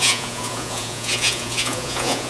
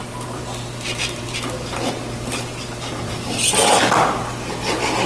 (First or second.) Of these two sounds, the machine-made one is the first